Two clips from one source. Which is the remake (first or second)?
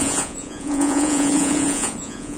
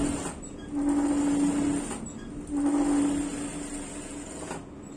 first